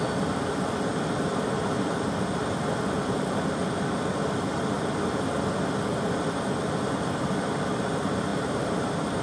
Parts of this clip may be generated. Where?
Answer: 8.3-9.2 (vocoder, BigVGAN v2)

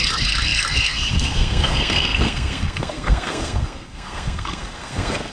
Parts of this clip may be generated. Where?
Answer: 0.0-5.3 (codec, SNAC)

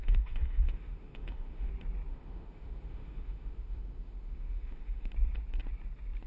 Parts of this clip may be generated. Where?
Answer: 0.0-1.7 (autoencoder, DAC-VAE); 2.1-5.1

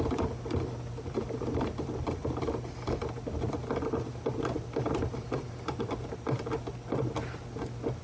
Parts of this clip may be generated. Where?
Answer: none

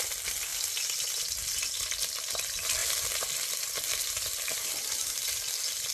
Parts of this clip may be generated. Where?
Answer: 0.5-1.2 (vocoder, BigVGAN v2); 2.8-5.4

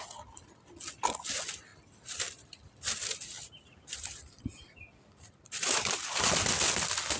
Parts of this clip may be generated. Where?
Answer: 1.7-6.0 (vocoder, BigVGAN v2)

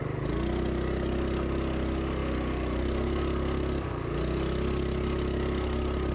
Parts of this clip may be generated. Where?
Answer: none